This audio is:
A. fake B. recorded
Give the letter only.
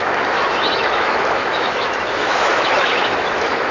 A